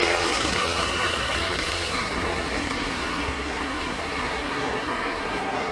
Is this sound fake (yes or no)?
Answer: yes